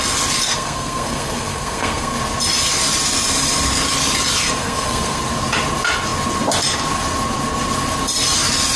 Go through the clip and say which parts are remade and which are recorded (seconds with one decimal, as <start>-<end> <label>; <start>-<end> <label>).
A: 0.0-0.4 recorded; 0.4-2.2 remade; 2.2-4.6 recorded; 4.6-5.2 remade; 5.2-8.8 recorded